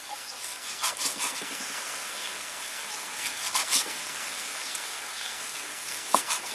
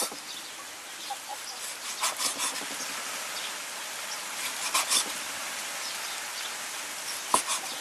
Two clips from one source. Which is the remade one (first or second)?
first